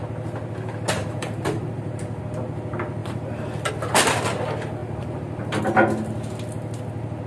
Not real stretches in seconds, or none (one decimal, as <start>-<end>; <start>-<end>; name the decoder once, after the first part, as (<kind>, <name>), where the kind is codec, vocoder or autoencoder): 1.0-2.2 (vocoder, BigVGAN v2); 3.0-3.7; 4.8-5.6